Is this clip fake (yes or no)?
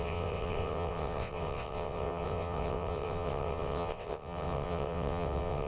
yes